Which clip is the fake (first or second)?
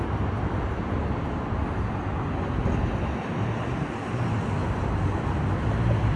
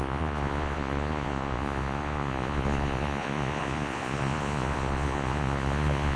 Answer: second